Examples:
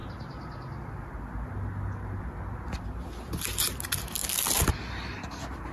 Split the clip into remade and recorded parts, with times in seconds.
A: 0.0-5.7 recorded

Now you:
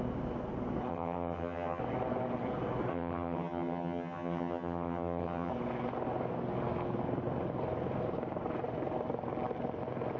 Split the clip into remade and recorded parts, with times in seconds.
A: 0.0-0.9 recorded; 0.9-1.8 remade; 1.8-2.9 recorded; 2.9-5.5 remade; 5.5-10.2 recorded

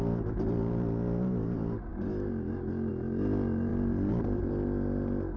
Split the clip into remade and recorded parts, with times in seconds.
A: 0.0-5.4 recorded

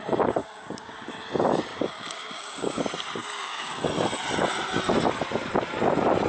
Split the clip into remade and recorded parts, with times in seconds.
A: 0.0-0.4 recorded; 0.4-1.1 remade; 1.1-1.7 recorded; 1.7-2.8 remade; 2.8-3.2 recorded; 3.2-3.8 remade; 3.8-6.3 recorded

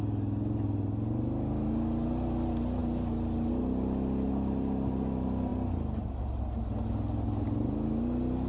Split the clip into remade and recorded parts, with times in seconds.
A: 0.0-8.5 recorded

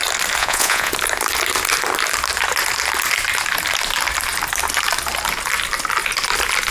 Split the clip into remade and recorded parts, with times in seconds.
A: 0.0-0.4 recorded; 0.4-0.9 remade; 0.9-6.7 recorded